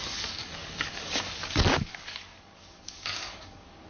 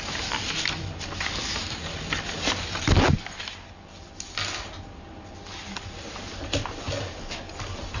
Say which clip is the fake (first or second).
first